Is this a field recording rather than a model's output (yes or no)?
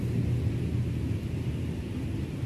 yes